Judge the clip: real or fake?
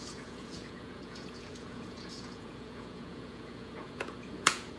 fake